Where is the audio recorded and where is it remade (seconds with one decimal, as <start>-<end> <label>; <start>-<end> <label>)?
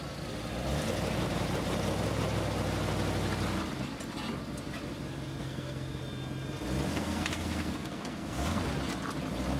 0.0-5.4 recorded; 5.4-6.0 remade; 6.0-6.9 recorded; 6.9-8.7 remade; 8.7-9.6 recorded